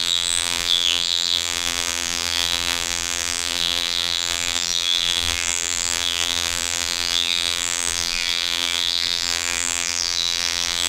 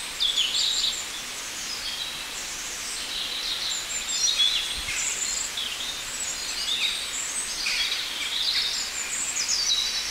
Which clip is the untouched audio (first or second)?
second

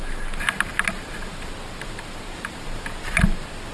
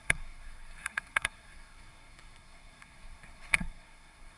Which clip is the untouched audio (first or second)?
first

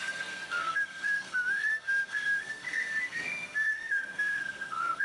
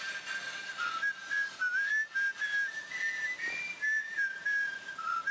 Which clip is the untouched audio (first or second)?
second